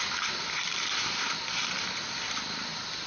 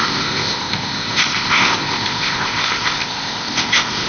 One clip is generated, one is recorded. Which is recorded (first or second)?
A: first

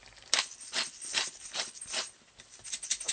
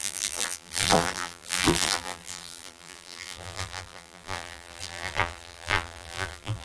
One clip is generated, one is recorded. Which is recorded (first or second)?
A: first